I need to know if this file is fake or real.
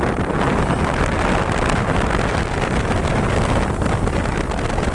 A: real